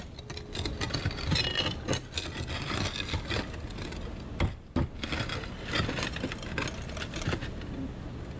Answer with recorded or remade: recorded